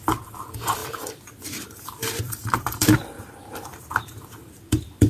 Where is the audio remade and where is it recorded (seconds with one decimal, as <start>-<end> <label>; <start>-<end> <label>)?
0.0-5.1 remade